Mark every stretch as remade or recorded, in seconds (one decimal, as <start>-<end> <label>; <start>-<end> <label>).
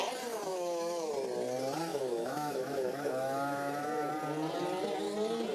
0.0-0.5 recorded; 0.5-1.1 remade; 1.1-1.9 recorded; 1.9-4.1 remade; 4.1-5.5 recorded